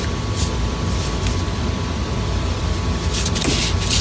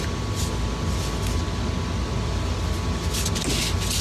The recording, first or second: second